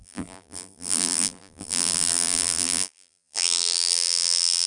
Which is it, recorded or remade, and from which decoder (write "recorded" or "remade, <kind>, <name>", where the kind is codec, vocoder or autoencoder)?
remade, vocoder, BigVGAN v2